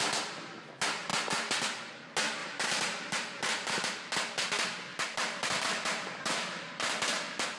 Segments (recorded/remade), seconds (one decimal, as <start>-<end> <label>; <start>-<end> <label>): 0.0-2.4 recorded; 2.4-4.1 remade; 4.1-4.9 recorded; 4.9-6.9 remade; 6.9-7.6 recorded